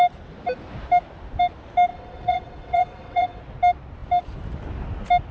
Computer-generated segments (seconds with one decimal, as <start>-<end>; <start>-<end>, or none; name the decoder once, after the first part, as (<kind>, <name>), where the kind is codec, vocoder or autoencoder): 1.9-3.4 (vocoder, WaveNeXt)